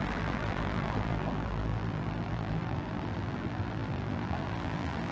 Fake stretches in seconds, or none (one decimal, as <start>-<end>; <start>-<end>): 0.0-5.1